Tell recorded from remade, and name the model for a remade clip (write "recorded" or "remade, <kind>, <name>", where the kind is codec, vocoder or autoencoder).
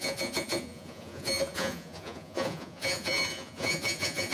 remade, vocoder, Vocos